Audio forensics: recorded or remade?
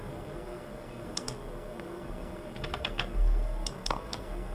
remade